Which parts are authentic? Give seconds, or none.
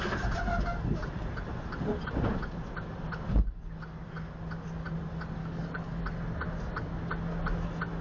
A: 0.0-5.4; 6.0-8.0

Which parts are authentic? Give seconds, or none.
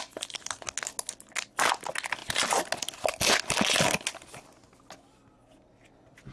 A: 0.0-6.3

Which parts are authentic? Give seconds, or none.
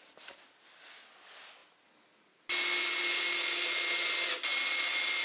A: 0.0-5.2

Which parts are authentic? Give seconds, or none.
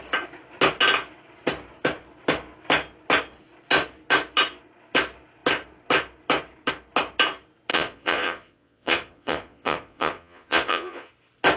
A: 0.0-7.7; 11.1-11.6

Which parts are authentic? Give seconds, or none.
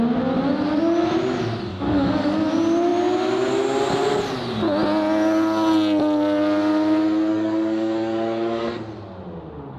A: 0.0-1.7; 2.5-7.3; 8.8-9.8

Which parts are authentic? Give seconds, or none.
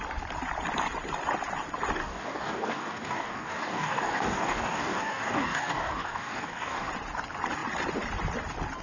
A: 0.0-2.0; 6.9-8.8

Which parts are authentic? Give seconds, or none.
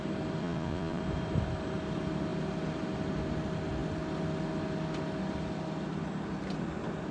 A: 0.0-0.4; 1.0-7.1